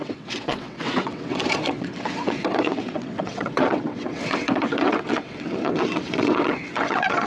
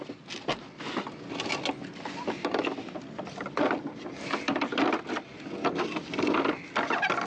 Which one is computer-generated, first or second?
first